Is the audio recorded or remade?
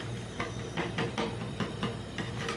remade